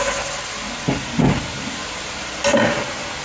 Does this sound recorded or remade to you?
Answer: recorded